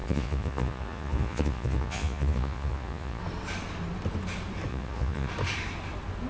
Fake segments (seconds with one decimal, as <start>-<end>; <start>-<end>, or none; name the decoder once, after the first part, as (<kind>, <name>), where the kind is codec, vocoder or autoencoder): 0.0-3.2 (vocoder, Vocos); 4.7-5.3

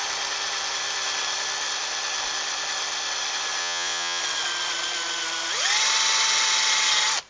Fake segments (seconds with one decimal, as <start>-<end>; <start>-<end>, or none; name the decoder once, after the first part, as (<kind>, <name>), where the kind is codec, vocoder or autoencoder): 3.6-4.2 (vocoder, Vocos)

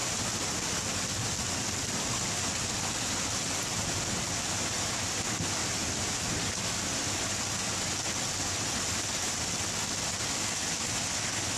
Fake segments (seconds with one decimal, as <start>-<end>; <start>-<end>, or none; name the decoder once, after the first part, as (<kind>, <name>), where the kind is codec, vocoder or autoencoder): none

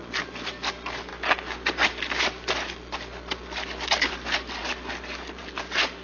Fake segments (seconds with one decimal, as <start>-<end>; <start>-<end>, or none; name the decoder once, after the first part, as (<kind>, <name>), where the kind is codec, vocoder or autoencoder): none